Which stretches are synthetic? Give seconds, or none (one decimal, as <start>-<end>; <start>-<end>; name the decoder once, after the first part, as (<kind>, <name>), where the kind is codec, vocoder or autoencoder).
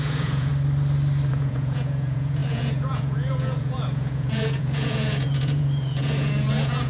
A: 0.0-0.5 (vocoder, Vocos); 1.3-6.9